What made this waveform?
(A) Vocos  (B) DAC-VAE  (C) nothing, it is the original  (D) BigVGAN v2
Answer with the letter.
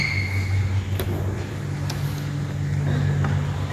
C